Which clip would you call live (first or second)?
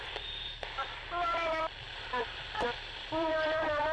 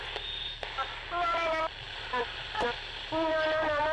second